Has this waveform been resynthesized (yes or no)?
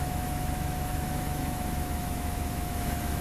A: yes